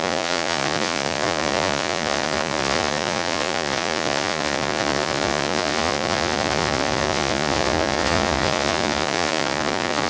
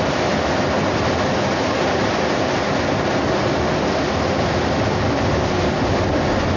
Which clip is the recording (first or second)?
second